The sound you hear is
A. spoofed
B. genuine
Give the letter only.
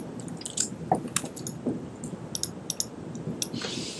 B